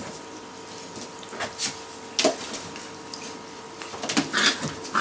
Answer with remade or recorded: recorded